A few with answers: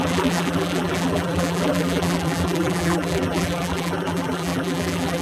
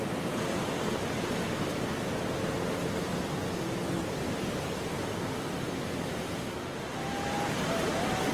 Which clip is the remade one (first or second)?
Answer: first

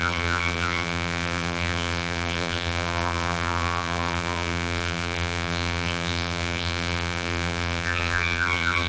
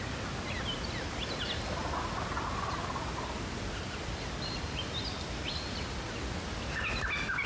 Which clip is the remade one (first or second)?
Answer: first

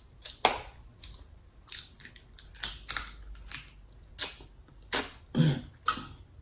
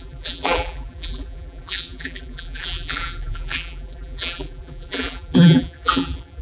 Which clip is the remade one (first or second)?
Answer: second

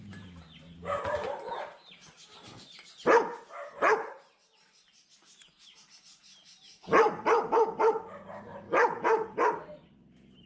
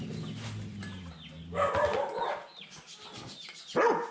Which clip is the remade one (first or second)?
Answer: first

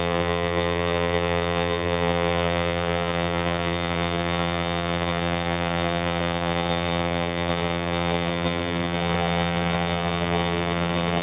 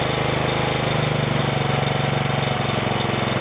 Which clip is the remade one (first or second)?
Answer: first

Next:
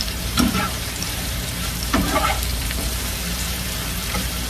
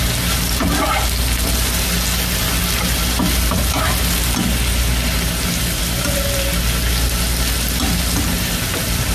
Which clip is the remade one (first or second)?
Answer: first